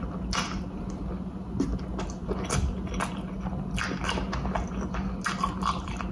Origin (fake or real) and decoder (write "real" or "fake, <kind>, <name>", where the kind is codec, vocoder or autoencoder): real